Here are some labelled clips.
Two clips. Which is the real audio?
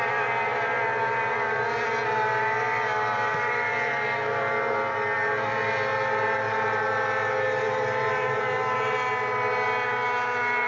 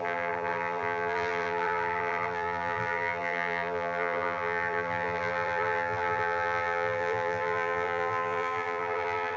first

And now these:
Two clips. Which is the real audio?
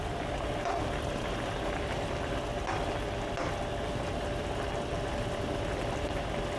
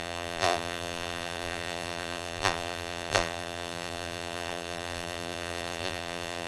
first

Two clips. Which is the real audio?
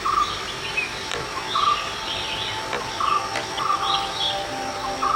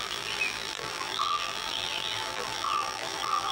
first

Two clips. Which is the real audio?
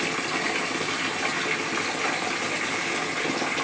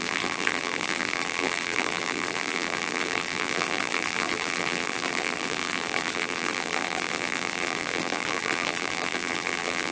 first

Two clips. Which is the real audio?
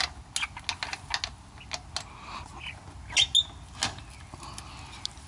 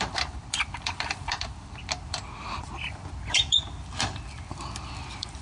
first